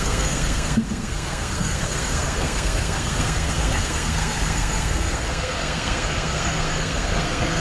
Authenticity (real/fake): fake